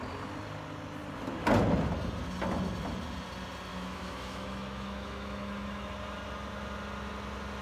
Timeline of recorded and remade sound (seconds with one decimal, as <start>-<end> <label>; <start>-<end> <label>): 0.0-3.7 recorded; 3.7-5.9 remade; 5.9-7.6 recorded